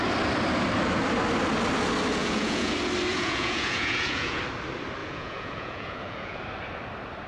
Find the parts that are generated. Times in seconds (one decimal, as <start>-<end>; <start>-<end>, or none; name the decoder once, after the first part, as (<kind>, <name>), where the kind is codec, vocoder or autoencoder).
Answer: 2.2-2.7 (vocoder, Vocos); 3.1-4.4; 5.0-6.4

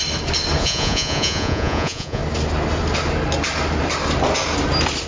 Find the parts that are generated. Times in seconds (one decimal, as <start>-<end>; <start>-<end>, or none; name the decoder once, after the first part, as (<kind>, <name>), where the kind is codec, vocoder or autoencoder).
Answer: 0.6-2.2 (vocoder, Vocos)

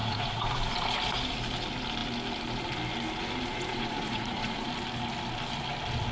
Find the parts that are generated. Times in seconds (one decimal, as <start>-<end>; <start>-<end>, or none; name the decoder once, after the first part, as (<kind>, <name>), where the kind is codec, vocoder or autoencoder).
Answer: 0.0-0.7 (vocoder, Vocos); 3.5-4.7